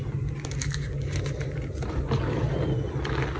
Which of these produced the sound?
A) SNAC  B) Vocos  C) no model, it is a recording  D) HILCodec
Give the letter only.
C